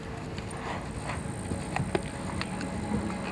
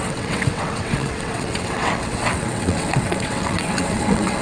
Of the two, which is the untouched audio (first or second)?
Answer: first